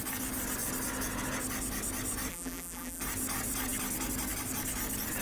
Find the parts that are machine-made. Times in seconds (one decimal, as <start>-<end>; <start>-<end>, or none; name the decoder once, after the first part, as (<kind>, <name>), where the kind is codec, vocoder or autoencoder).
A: 2.3-3.0 (vocoder, BigVGAN v2)